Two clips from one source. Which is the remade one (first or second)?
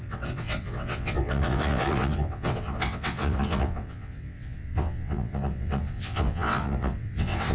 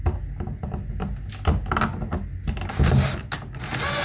first